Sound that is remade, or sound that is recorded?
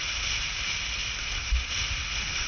recorded